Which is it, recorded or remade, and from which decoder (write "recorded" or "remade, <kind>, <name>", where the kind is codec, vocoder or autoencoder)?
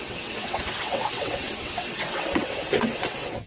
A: remade, vocoder, WaveNeXt